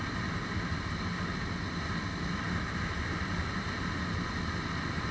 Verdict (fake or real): real